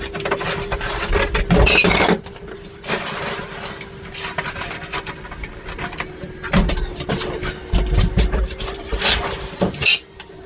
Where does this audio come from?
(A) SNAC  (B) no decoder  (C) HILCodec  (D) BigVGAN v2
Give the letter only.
B